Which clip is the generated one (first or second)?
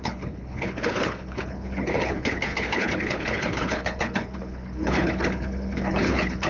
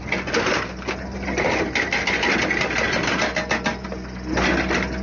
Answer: first